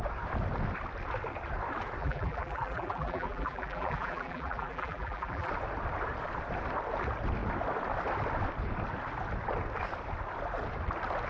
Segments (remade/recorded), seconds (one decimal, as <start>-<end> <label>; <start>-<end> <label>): 0.0-2.0 recorded; 2.0-5.5 remade; 5.5-11.3 recorded